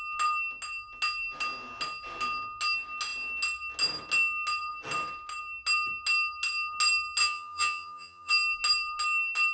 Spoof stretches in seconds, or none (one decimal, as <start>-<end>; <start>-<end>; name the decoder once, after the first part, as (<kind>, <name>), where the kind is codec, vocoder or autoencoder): 7.2-8.3 (vocoder, HiFi-GAN)